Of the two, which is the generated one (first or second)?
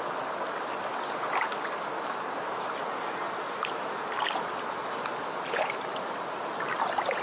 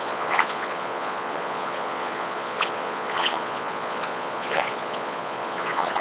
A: second